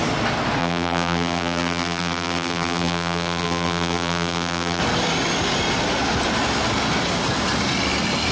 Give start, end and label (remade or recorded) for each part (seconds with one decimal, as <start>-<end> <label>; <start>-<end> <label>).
0.0-0.6 recorded; 0.6-4.8 remade; 4.8-8.3 recorded